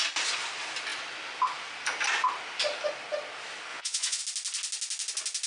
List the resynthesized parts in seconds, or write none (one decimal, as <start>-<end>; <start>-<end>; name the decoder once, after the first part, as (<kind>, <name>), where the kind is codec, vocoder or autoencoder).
3.7-4.2 (vocoder, Vocos)